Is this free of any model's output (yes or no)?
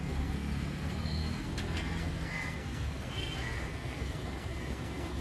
no